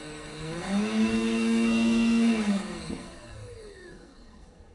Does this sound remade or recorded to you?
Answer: remade